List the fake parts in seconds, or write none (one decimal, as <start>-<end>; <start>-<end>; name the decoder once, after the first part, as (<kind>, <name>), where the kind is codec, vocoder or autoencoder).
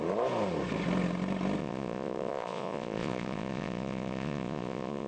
1.6-5.1 (vocoder, Vocos)